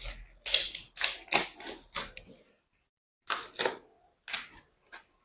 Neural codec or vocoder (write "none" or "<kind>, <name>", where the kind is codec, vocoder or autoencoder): none